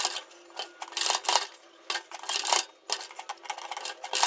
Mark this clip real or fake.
real